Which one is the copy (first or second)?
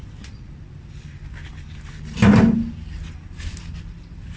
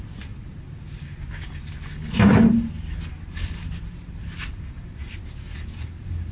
second